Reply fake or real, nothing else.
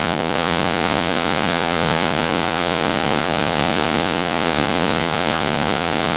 fake